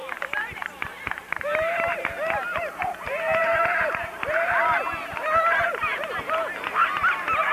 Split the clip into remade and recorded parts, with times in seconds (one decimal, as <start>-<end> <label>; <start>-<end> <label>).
0.0-1.4 remade; 1.4-3.4 recorded; 3.4-4.8 remade; 4.8-7.5 recorded

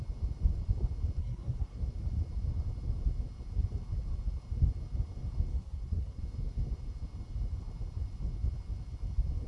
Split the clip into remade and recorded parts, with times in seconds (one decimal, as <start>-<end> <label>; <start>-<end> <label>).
0.0-1.2 recorded; 1.2-1.8 remade; 1.8-5.5 recorded; 5.5-6.2 remade; 6.2-9.5 recorded

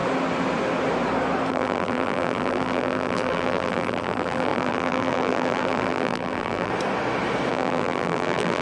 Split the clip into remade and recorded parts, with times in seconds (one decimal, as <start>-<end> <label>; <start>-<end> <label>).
0.0-1.5 recorded; 1.5-6.7 remade; 6.7-7.5 recorded; 7.5-8.6 remade

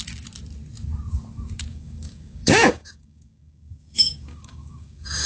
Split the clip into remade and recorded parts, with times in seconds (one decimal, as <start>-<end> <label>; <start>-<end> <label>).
0.0-1.7 recorded; 1.7-5.3 remade

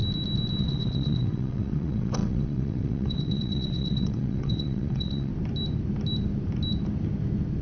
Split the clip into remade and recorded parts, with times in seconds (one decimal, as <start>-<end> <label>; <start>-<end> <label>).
0.0-0.6 recorded; 0.6-5.3 remade; 5.3-7.6 recorded